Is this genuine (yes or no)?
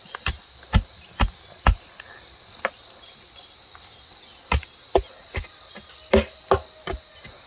yes